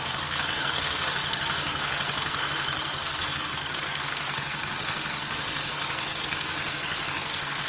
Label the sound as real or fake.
fake